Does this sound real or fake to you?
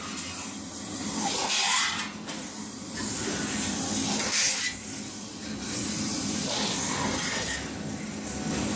real